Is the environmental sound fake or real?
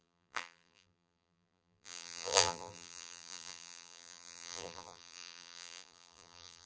fake